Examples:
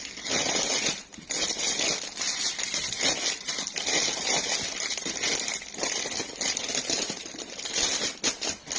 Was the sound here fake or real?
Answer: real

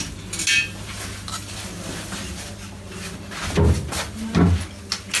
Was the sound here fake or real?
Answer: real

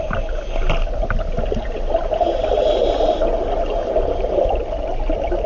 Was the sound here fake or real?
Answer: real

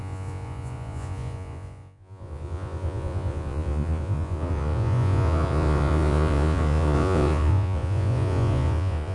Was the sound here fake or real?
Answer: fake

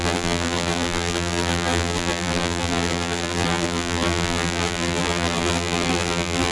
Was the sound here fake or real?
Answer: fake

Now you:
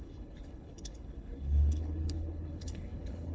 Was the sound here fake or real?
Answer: fake